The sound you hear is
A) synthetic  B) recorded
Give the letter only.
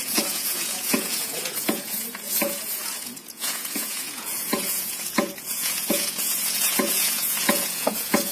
A